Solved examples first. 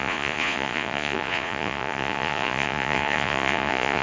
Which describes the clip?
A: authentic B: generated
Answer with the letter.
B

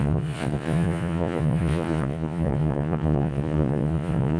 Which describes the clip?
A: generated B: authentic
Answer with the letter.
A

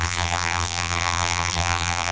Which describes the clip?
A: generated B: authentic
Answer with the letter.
A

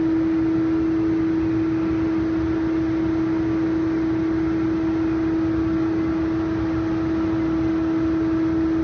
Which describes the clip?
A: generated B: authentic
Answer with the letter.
B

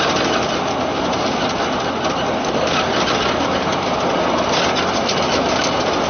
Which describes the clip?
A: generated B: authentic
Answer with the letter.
B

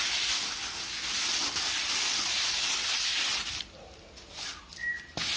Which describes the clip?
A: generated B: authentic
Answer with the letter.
B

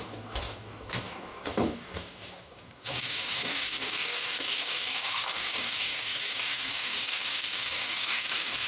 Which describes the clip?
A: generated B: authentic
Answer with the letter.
A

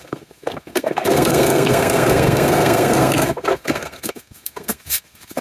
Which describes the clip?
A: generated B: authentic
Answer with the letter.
A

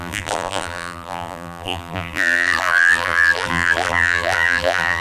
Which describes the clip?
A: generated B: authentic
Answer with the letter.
A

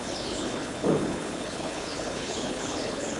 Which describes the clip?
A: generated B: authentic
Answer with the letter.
A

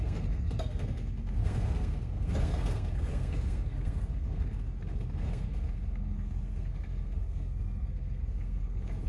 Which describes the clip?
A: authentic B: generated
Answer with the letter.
B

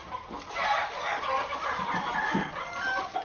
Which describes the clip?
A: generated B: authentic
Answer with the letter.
A